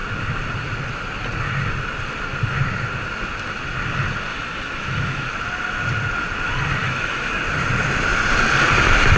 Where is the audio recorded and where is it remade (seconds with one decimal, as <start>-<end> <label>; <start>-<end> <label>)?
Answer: 0.0-4.3 recorded; 4.3-5.3 remade; 5.3-6.8 recorded; 6.8-7.3 remade; 7.3-9.2 recorded